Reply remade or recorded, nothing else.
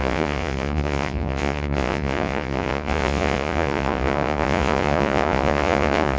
remade